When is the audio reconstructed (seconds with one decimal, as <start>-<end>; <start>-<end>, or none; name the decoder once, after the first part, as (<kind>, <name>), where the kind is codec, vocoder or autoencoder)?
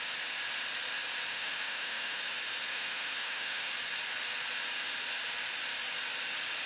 1.3-2.2 (autoencoder, DAC-VAE); 2.7-3.7